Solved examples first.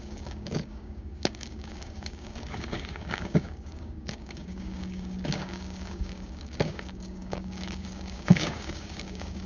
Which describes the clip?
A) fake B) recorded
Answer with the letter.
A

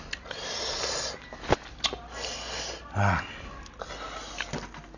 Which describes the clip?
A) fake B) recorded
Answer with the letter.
B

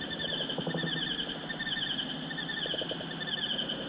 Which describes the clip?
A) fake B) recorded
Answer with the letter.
B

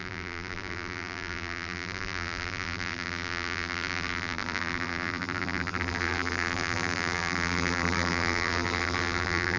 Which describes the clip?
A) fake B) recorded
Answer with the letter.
A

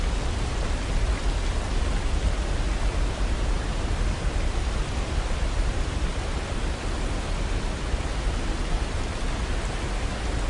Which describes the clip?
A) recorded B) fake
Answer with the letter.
A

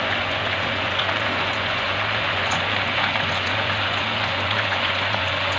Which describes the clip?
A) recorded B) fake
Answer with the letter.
B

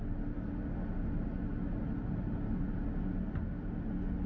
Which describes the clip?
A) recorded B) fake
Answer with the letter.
A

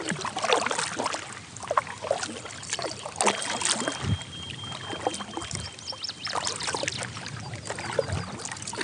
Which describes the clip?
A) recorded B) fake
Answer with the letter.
A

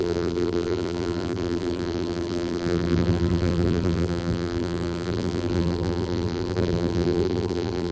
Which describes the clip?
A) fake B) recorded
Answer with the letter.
A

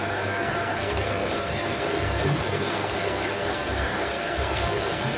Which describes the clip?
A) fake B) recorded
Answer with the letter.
A